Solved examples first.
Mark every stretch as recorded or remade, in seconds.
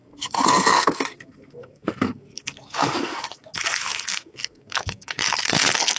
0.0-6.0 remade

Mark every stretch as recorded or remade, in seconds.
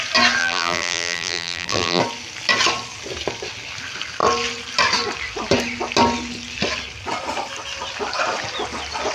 0.0-0.4 recorded; 0.4-2.0 remade; 2.0-9.1 recorded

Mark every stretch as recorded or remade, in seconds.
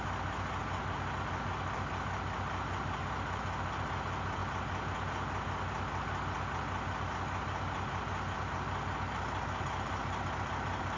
0.0-11.0 recorded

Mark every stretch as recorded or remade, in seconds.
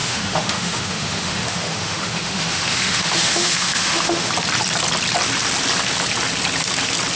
0.0-4.3 remade; 4.3-7.2 recorded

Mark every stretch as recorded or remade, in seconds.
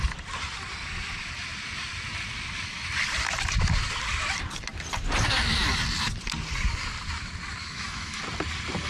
0.0-7.6 recorded; 7.6-8.2 remade; 8.2-8.9 recorded